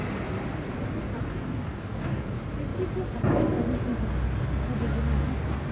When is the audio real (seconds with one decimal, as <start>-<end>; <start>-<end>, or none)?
0.0-1.3; 2.3-4.8; 5.3-5.7